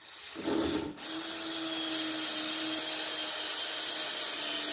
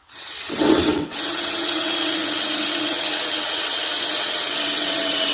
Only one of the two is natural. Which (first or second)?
first